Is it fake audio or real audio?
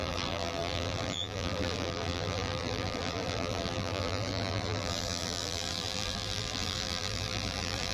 fake